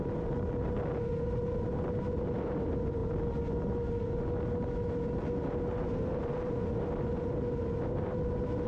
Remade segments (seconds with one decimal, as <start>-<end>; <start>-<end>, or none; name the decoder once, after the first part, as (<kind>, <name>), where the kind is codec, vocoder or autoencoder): none